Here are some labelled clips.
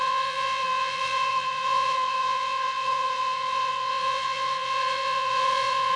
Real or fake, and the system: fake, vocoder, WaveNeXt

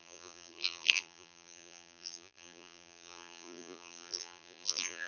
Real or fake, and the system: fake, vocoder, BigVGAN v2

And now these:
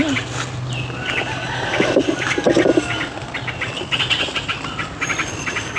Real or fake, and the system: real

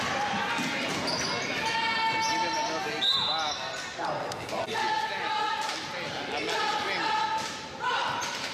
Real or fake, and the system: real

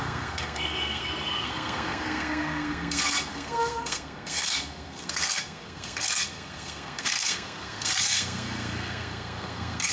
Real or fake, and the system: fake, codec, SNAC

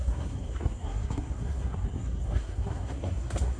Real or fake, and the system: fake, codec, SNAC